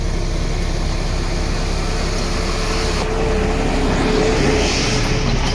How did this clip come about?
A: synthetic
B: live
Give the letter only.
B